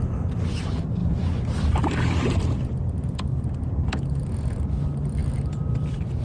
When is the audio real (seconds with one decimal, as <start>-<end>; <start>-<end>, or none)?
0.0-6.2